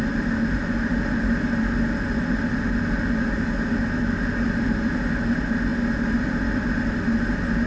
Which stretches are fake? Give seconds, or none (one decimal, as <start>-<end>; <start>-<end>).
none